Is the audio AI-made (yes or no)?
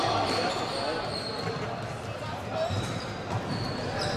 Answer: no